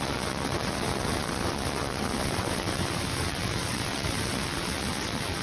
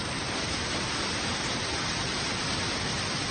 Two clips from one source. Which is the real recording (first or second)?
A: second